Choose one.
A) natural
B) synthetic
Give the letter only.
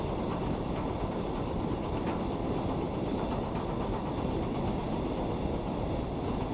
A